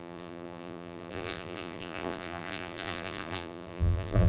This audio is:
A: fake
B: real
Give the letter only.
A